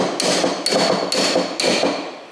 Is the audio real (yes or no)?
yes